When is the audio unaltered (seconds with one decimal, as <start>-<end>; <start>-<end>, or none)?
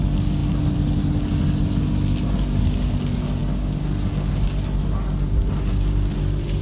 0.0-6.6